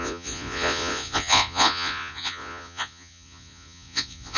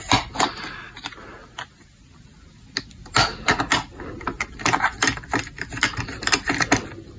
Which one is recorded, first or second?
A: second